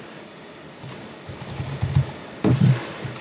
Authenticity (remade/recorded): recorded